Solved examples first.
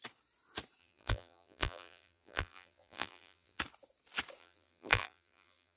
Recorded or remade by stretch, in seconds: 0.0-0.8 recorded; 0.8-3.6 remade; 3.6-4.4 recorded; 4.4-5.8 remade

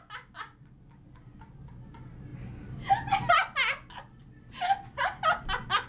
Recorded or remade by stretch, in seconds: 0.0-5.9 recorded

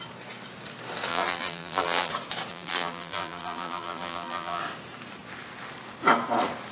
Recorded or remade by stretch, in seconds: 0.0-1.1 recorded; 1.1-2.1 remade; 2.1-2.5 recorded; 2.5-4.6 remade; 4.6-6.7 recorded

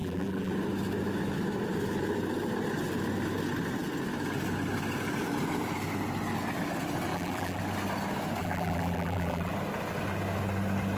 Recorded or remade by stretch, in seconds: 0.0-0.5 remade; 0.5-7.1 recorded; 7.1-7.6 remade; 7.6-8.4 recorded; 8.4-9.5 remade; 9.5-11.0 recorded

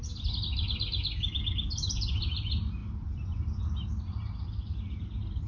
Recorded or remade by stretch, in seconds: 0.0-2.8 recorded; 2.8-3.6 remade; 3.6-5.5 recorded

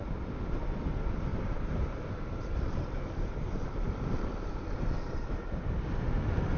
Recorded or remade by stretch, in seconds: 0.0-1.3 recorded; 1.3-5.3 remade; 5.3-6.6 recorded

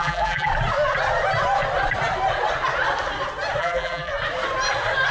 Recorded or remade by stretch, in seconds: 0.0-0.5 remade; 0.5-3.6 recorded; 3.6-4.1 remade; 4.1-5.1 recorded